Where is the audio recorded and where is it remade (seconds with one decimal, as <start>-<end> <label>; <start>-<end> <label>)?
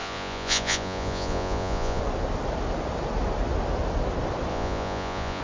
0.0-2.0 remade; 2.0-4.5 recorded; 4.5-5.4 remade